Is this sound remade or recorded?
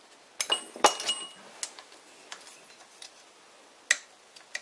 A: recorded